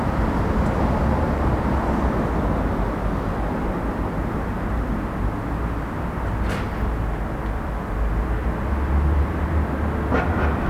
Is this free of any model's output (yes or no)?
yes